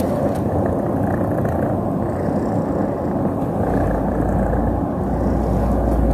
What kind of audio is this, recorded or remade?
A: recorded